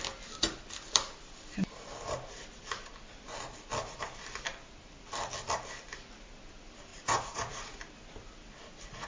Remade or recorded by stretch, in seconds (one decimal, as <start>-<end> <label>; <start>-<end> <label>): 0.0-6.9 recorded; 6.9-7.8 remade; 7.8-9.1 recorded